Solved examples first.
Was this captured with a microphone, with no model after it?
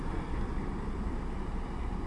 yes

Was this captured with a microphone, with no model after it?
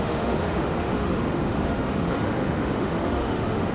no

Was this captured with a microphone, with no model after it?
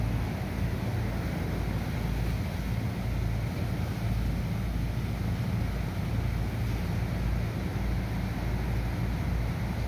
yes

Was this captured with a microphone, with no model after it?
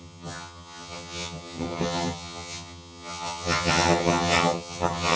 no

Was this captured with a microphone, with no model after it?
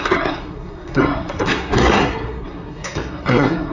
no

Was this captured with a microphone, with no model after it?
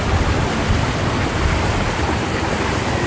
yes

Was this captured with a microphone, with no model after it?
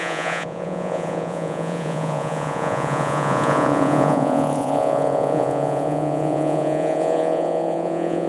no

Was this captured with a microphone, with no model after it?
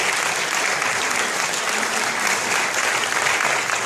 yes